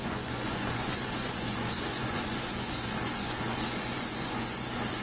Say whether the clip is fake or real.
fake